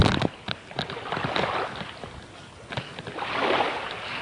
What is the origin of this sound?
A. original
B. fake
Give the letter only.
A